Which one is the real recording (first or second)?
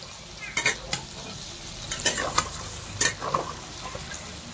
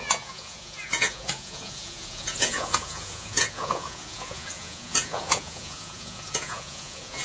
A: first